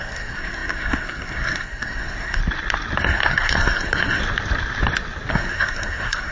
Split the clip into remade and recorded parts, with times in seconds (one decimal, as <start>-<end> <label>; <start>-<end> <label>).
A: 0.0-2.4 remade; 2.4-3.0 recorded; 3.0-4.2 remade; 4.2-5.3 recorded; 5.3-6.3 remade